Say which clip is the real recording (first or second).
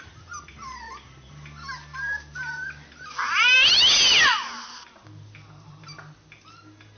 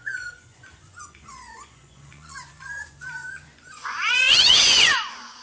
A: first